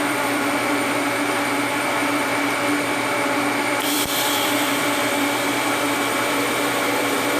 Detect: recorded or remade remade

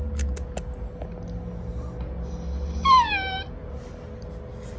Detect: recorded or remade recorded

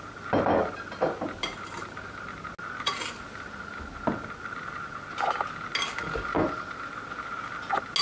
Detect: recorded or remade recorded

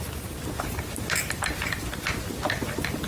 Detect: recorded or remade recorded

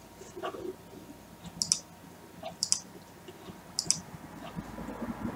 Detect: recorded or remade recorded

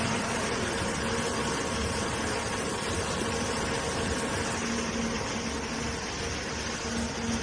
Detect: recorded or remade recorded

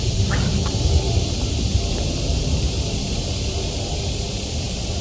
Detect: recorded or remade remade